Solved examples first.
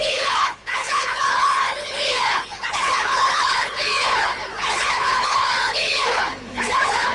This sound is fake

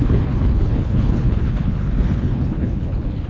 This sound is fake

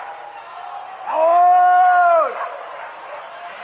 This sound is real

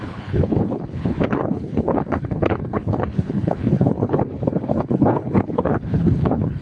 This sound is fake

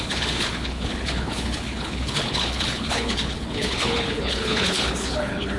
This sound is fake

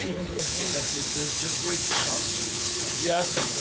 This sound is fake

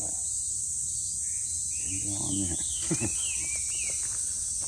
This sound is real